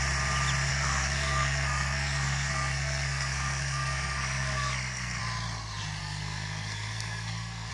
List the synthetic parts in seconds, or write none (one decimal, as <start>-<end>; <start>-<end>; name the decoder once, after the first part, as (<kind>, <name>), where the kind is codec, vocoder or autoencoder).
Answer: 0.7-5.2 (codec, SNAC); 6.0-7.7